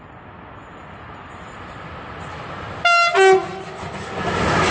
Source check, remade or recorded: recorded